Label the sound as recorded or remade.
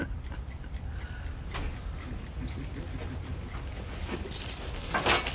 recorded